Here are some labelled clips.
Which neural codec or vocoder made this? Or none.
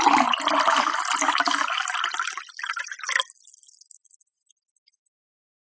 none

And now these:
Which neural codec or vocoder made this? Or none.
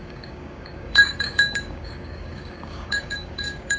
codec, DAC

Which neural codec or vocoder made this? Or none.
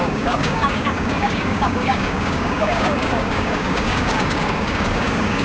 codec, DAC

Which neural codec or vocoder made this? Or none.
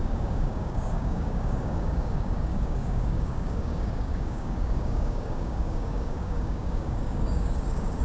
codec, DAC